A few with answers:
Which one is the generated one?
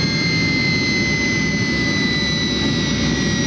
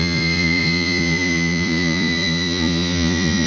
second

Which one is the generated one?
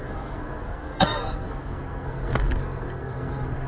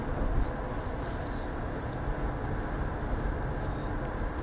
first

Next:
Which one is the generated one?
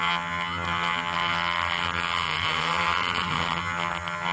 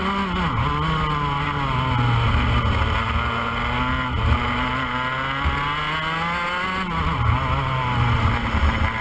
first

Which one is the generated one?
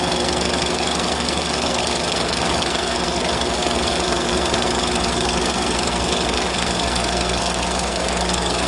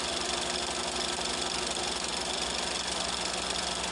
first